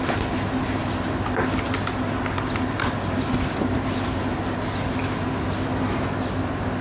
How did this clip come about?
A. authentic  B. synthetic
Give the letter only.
A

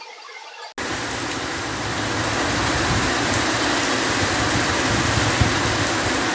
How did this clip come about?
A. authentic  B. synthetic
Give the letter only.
A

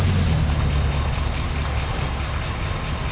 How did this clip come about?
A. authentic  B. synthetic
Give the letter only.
A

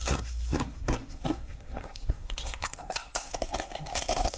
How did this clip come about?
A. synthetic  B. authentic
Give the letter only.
A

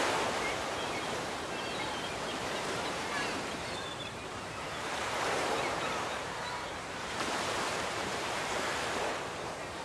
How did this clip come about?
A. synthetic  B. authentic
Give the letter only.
A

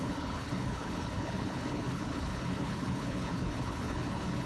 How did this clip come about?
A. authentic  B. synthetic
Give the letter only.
B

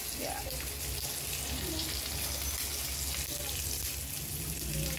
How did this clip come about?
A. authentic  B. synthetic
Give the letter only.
A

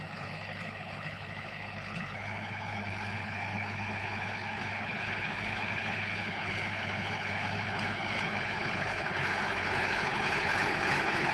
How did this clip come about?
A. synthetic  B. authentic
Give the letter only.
A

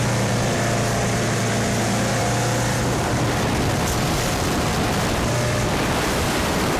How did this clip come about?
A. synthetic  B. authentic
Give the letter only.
A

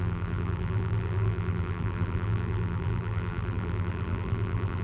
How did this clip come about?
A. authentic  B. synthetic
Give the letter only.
B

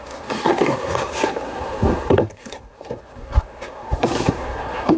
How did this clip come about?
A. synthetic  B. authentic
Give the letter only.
A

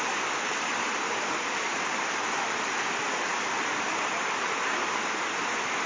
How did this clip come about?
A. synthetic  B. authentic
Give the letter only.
A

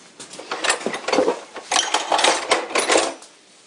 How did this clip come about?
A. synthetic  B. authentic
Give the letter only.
B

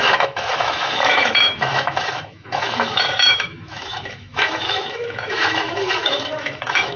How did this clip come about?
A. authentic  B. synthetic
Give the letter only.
B